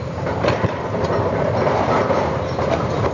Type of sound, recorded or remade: remade